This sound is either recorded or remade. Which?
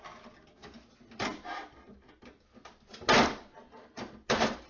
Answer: recorded